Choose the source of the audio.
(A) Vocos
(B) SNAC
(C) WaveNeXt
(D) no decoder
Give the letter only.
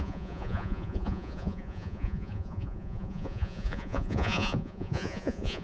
A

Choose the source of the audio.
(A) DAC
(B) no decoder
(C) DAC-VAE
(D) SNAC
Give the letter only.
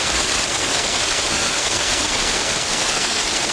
D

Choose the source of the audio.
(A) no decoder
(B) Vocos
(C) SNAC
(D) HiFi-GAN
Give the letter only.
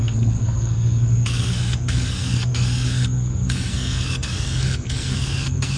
C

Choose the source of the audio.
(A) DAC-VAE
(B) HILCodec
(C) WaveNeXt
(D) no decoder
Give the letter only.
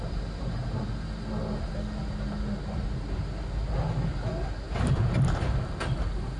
D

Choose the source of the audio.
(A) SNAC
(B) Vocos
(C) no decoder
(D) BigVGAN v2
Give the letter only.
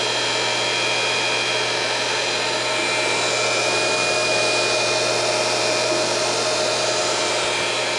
C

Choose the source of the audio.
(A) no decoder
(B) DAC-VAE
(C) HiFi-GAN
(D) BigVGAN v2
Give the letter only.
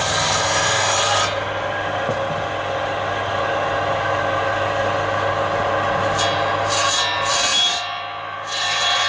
A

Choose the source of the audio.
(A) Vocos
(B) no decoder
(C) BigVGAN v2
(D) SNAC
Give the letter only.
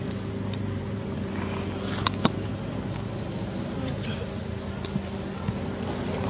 B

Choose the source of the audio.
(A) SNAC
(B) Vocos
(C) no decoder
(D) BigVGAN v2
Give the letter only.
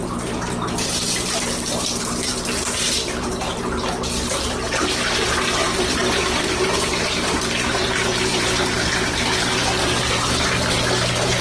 D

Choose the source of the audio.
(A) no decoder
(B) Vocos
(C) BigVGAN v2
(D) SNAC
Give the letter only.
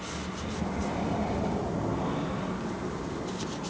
A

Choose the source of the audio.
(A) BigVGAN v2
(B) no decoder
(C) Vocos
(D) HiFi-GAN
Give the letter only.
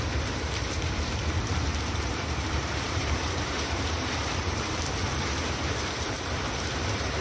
A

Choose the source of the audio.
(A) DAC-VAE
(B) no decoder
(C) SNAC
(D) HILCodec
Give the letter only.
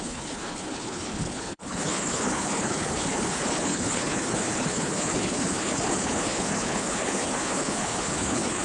D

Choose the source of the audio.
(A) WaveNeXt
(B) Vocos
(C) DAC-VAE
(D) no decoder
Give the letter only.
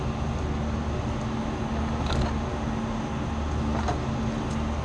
D